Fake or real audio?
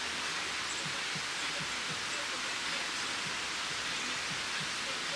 real